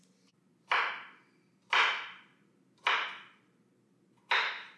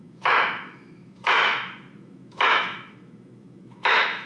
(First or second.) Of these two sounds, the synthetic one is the second